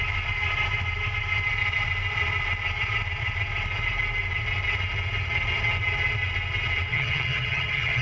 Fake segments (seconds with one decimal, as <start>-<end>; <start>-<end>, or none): 6.9-8.0